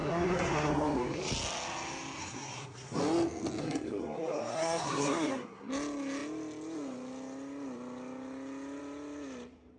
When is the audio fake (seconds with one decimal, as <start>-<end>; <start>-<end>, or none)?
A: 0.0-1.2; 2.2-3.0; 3.6-5.7